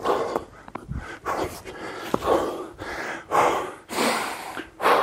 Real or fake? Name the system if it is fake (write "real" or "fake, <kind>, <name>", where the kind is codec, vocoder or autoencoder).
fake, vocoder, BigVGAN v2